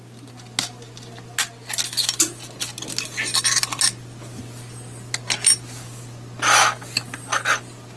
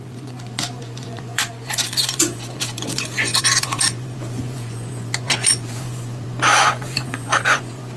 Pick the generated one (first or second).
second